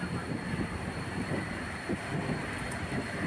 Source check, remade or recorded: remade